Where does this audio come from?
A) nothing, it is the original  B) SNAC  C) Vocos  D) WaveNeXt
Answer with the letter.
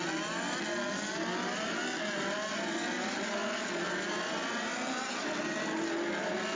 A